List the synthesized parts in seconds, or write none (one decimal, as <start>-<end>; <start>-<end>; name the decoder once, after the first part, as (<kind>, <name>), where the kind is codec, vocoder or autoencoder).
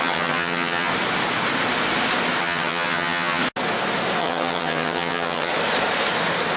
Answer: 0.0-0.9 (vocoder, HiFi-GAN); 2.4-3.4; 4.2-5.5